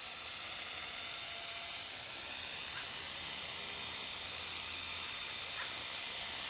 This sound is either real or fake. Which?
real